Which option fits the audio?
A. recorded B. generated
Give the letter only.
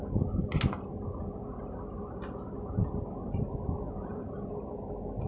A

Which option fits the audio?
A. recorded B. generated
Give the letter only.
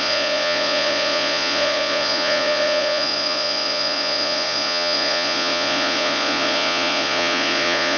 B